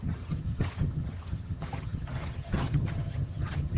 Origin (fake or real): fake